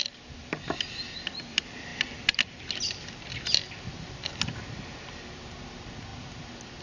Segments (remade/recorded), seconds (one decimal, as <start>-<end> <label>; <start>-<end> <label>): 0.0-6.8 recorded